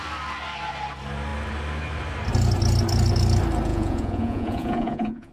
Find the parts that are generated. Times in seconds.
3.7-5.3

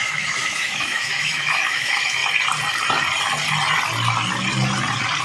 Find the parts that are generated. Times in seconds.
0.0-2.2

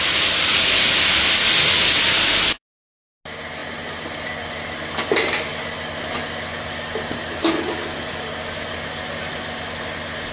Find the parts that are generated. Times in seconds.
none

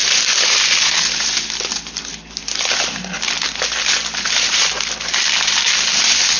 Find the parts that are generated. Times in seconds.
none

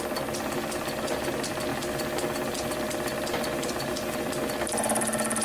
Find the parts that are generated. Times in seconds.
none

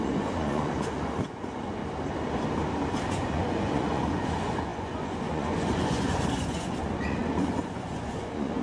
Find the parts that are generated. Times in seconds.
0.0-1.8; 3.1-8.6

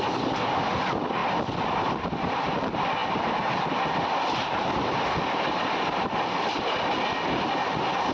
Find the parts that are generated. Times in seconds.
none